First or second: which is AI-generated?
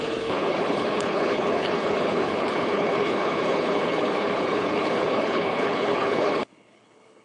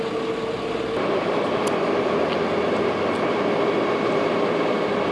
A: first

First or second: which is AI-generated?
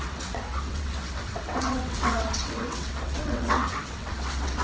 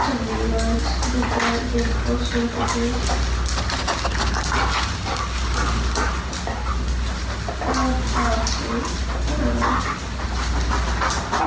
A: first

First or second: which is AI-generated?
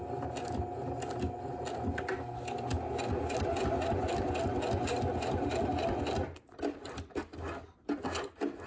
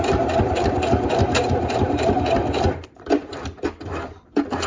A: second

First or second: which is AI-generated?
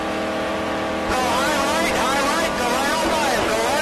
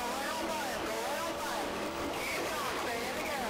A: second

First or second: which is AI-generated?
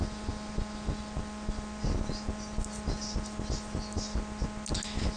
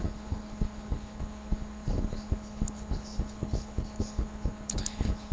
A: second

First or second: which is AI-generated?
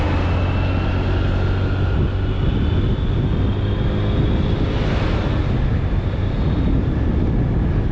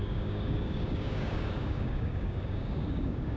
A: second